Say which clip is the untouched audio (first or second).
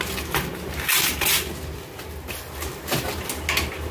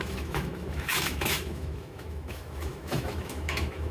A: first